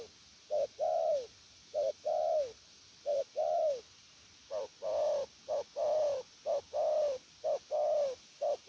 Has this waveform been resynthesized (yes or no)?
no